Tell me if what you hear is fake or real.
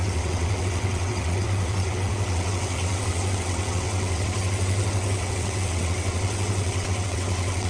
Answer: fake